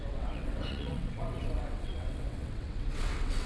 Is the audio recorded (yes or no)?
no